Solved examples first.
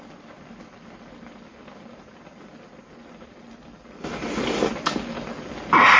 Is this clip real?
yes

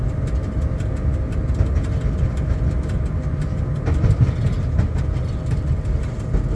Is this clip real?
yes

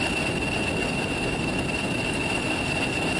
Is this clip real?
yes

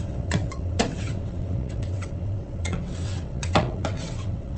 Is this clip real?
no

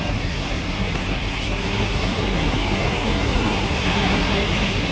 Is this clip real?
no